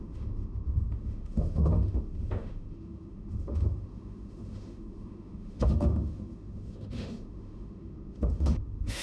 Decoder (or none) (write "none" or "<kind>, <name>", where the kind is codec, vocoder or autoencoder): autoencoder, DAC-VAE